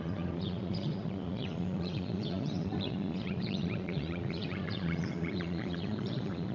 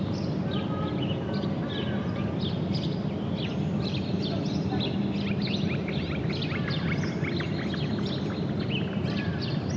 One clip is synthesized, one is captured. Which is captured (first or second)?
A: second